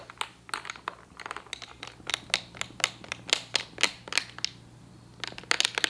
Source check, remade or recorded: recorded